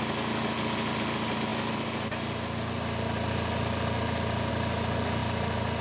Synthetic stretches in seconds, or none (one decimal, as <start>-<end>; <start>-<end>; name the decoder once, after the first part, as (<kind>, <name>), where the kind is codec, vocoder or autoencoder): none